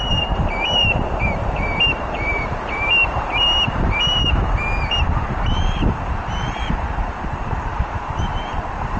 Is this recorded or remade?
remade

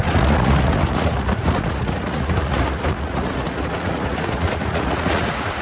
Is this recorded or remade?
remade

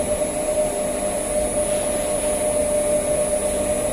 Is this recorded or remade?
recorded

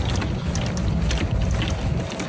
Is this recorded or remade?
recorded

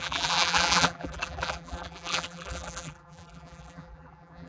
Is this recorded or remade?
remade